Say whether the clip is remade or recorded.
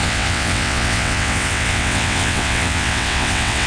remade